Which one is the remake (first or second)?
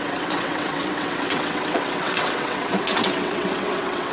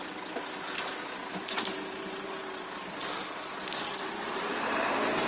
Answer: first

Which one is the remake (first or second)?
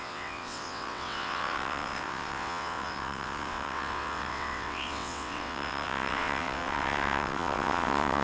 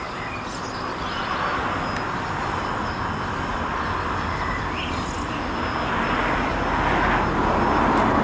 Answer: first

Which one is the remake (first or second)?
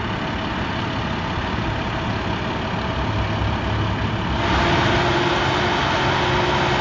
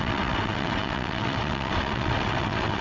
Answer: second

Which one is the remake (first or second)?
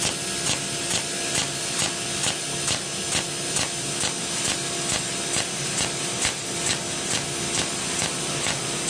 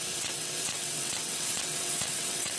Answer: second